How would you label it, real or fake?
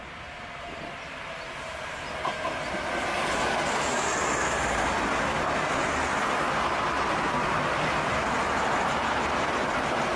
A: real